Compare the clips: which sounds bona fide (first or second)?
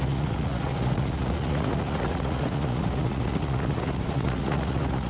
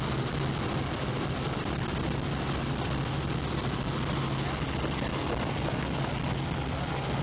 second